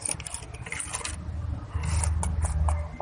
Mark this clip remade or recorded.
recorded